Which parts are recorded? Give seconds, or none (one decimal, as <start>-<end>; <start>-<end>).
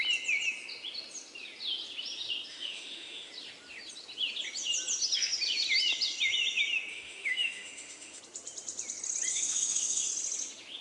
0.0-2.5; 3.3-6.9; 8.2-9.3; 10.1-10.8